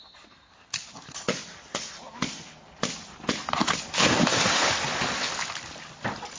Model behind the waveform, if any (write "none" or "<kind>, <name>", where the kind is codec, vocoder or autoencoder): none